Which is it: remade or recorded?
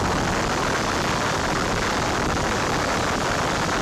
recorded